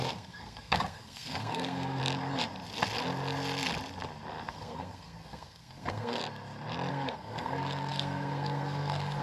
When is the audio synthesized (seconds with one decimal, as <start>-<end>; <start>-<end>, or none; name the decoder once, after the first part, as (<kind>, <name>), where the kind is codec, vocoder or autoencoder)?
0.0-2.0 (codec, SNAC); 4.5-6.2; 6.9-9.2